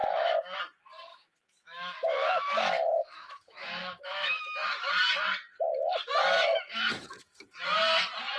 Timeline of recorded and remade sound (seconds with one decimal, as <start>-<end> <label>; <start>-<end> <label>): 0.0-0.6 remade; 0.6-1.1 recorded; 1.1-4.9 remade; 4.9-5.7 recorded; 5.7-7.6 remade; 7.6-8.4 recorded